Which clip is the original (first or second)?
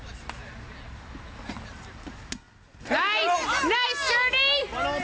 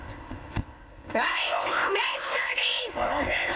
first